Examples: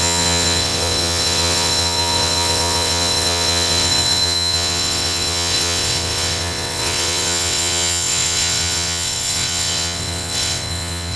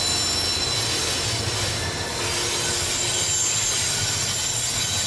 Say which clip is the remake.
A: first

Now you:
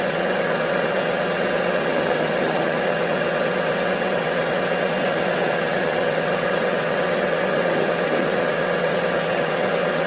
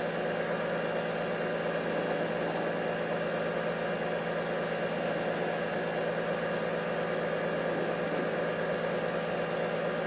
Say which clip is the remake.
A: first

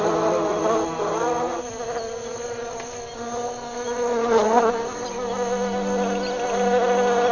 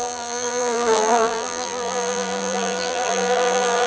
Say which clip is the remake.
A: second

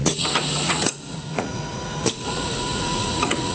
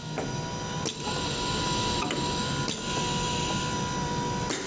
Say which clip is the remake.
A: first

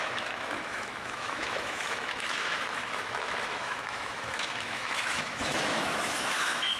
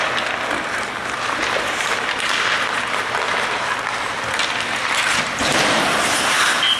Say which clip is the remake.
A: first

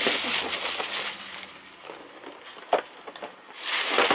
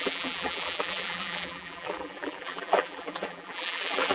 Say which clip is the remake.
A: second